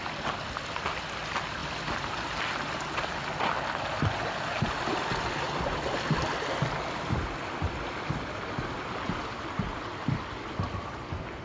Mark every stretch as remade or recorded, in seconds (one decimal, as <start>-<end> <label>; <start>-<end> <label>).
0.0-11.4 recorded